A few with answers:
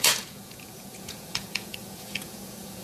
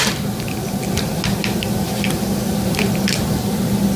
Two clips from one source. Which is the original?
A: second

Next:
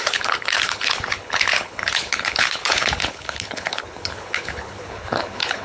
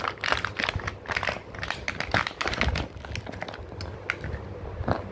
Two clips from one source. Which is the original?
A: second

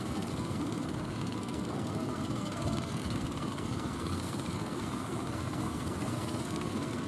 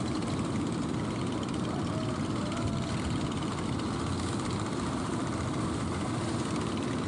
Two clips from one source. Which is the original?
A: second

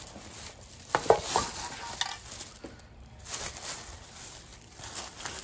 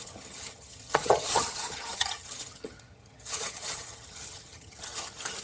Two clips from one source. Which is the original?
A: first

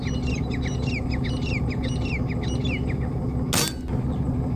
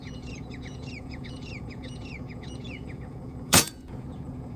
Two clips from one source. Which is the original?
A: first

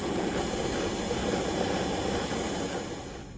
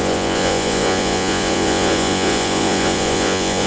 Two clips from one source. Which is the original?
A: first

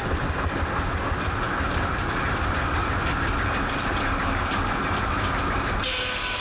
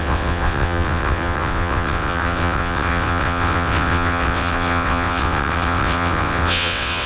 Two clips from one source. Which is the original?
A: first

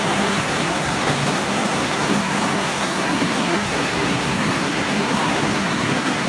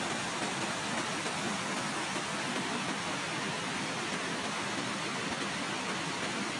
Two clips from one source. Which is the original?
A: second